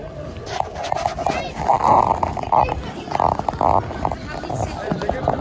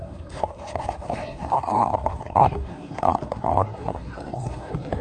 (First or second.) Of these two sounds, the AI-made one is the second